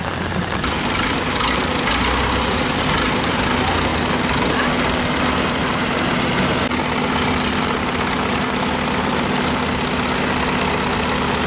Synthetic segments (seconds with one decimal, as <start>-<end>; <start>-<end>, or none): none